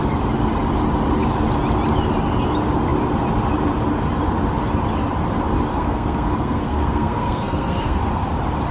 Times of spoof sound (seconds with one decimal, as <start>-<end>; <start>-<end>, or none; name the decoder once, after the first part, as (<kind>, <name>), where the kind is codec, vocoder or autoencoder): 5.7-8.0 (codec, SNAC)